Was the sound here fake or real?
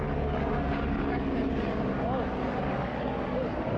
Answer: fake